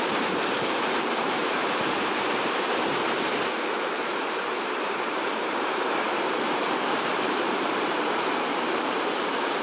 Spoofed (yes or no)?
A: yes